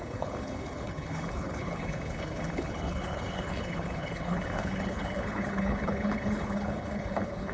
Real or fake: fake